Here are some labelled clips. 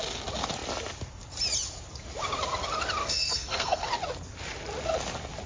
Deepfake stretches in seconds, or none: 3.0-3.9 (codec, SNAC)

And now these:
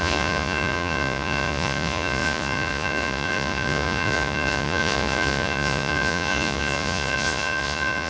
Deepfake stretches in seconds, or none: 0.0-8.1 (vocoder, Vocos)

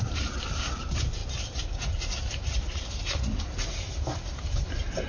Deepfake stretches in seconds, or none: 0.0-1.2 (vocoder, BigVGAN v2); 3.7-5.1

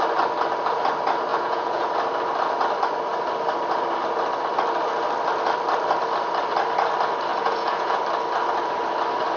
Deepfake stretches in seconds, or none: 1.3-1.9 (vocoder, Vocos); 7.3-8.0

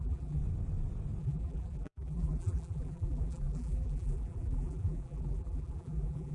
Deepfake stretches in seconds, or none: 0.0-0.4 (vocoder, BigVGAN v2); 1.2-6.3

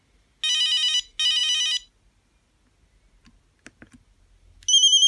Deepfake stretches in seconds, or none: none